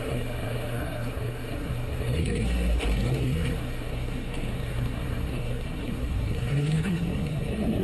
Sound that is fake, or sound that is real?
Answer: fake